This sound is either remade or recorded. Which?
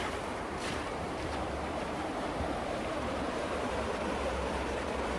remade